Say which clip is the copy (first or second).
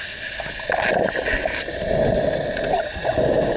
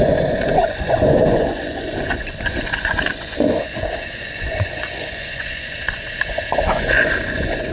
second